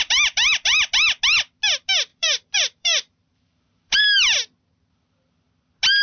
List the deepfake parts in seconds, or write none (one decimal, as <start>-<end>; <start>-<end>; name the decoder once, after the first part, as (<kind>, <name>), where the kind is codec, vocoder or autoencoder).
2.1-4.0 (vocoder, BigVGAN v2)